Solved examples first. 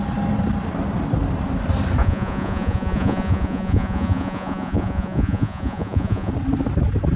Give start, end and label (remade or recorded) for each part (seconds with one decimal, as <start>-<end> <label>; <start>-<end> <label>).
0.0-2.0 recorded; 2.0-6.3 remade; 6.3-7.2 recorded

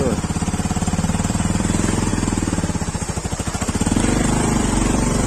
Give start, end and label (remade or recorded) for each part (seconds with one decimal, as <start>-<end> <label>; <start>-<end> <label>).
0.0-2.1 remade; 2.1-4.0 recorded; 4.0-5.3 remade

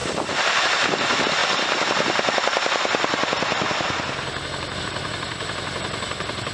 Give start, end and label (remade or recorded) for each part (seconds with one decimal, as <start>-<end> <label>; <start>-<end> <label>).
0.0-1.4 remade; 1.4-4.8 recorded; 4.8-6.5 remade